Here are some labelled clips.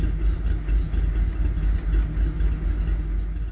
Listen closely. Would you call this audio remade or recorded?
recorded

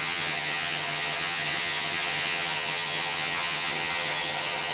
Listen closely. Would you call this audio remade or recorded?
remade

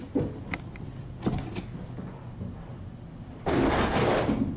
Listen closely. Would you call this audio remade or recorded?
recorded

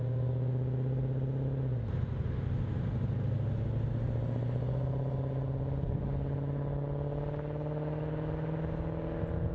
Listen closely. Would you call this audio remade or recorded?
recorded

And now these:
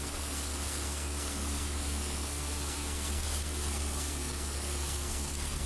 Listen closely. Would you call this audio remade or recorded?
remade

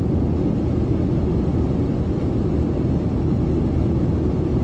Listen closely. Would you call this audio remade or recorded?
recorded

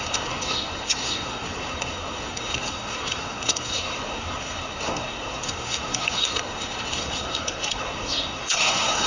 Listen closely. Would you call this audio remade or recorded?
remade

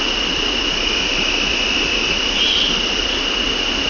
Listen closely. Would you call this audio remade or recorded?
recorded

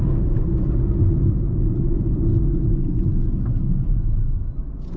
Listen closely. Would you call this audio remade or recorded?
recorded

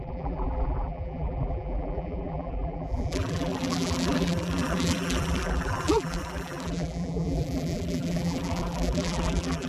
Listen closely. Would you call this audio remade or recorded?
remade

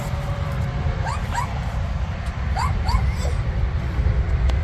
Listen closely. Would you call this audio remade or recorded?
remade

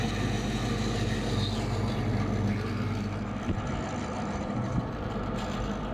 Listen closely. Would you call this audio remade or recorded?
recorded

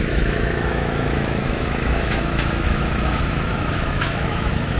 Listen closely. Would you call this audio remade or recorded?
remade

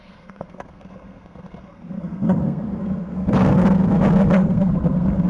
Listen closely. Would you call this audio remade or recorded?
remade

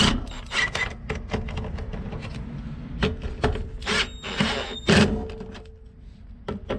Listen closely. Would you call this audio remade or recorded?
recorded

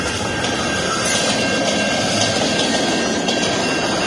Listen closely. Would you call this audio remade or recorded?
recorded